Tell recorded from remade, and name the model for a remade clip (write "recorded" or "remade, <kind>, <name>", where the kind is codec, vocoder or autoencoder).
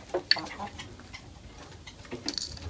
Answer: recorded